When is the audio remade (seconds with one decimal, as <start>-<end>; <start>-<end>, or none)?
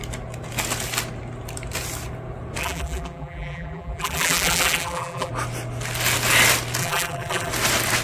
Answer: 2.6-5.3; 6.8-7.5